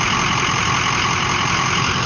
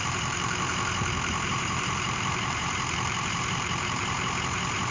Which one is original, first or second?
first